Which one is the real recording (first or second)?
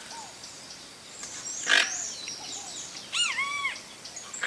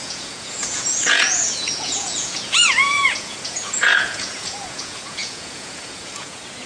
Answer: first